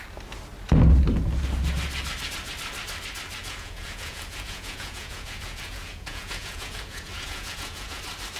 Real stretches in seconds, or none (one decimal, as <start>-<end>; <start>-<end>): 0.0-3.4; 8.0-8.4